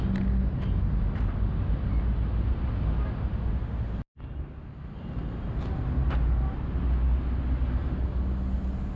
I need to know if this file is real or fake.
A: real